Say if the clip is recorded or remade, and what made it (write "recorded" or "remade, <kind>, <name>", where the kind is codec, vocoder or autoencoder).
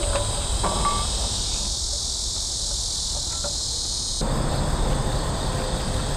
recorded